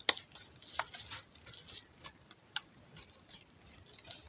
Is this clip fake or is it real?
real